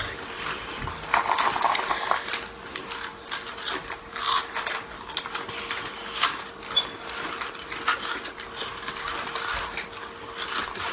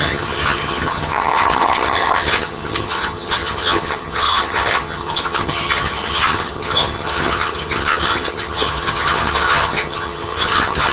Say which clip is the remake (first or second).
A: second